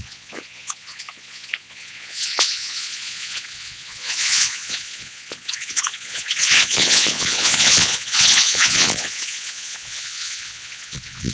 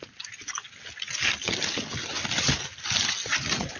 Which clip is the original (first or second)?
second